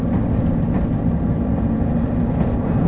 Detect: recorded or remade recorded